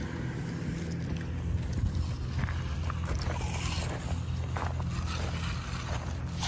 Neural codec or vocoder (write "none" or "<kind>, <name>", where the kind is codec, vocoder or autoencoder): none